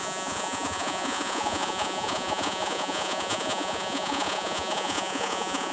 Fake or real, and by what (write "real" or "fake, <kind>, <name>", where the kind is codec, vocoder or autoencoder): fake, vocoder, Vocos